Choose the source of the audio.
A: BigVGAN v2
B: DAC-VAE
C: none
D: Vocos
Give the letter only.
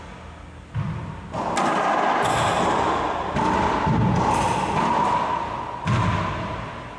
C